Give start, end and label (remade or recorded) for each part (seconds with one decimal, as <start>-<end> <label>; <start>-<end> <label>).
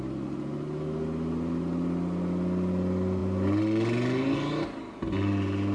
0.0-5.7 recorded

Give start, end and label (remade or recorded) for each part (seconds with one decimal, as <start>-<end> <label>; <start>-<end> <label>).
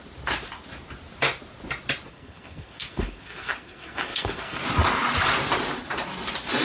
0.0-2.1 recorded; 2.1-4.6 remade; 4.6-6.6 recorded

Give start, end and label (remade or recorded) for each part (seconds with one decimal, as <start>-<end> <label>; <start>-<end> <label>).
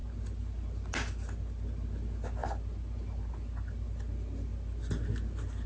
0.0-5.7 recorded